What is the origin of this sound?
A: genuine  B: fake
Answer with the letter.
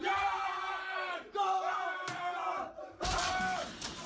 B